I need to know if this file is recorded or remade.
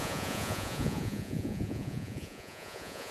remade